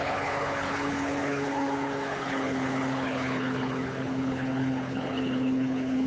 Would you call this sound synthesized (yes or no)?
yes